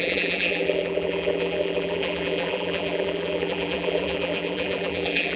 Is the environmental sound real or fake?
fake